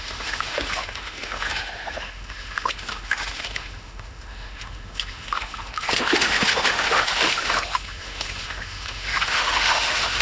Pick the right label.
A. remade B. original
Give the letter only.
A